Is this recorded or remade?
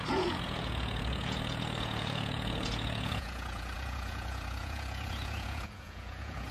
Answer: remade